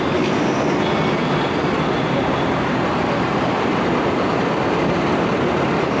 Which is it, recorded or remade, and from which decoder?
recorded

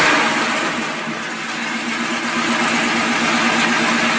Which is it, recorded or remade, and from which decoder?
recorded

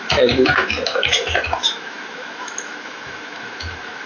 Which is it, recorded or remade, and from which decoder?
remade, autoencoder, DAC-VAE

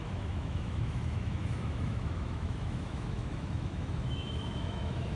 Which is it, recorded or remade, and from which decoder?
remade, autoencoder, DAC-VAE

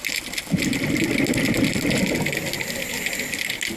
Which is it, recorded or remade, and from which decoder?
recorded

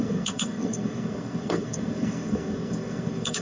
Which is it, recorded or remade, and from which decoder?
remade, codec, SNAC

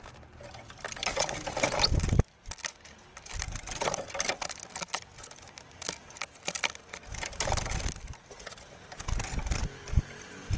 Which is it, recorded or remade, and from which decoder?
recorded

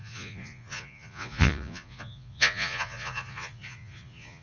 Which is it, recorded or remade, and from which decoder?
remade, vocoder, Vocos